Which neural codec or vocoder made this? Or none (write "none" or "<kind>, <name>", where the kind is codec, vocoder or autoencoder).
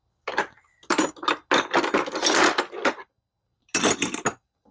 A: none